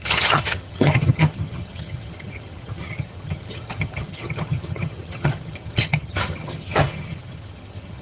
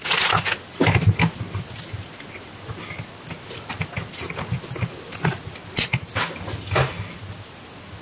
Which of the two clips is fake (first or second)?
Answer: first